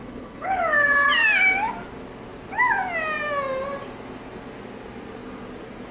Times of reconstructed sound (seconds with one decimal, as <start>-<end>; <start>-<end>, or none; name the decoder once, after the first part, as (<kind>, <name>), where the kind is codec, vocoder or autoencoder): 0.0-0.6 (codec, HILCodec)